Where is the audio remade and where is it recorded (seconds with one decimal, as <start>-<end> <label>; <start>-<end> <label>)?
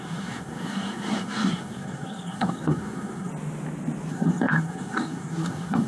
0.0-3.3 remade; 3.3-4.1 recorded; 4.1-5.9 remade